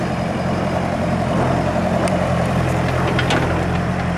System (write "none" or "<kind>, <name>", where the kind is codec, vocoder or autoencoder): vocoder, BigVGAN v2